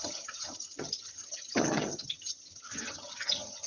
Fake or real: fake